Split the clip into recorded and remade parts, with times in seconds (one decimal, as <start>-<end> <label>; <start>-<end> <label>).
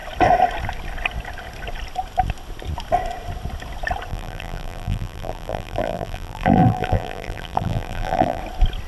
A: 0.0-4.1 recorded; 4.1-8.4 remade; 8.4-8.9 recorded